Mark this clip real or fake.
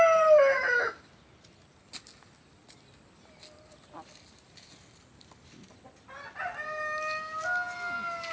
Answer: real